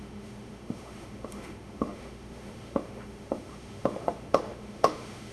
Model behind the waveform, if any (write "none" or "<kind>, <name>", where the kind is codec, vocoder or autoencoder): autoencoder, DAC-VAE